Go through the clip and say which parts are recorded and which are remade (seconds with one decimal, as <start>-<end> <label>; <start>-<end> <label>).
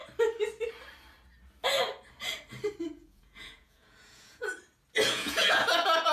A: 0.0-2.8 recorded; 2.8-4.4 remade; 4.4-5.1 recorded; 5.1-6.1 remade